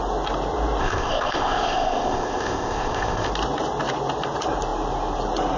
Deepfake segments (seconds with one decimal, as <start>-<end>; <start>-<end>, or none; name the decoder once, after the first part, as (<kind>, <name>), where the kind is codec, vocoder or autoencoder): 0.8-3.3 (codec, ZipCodec)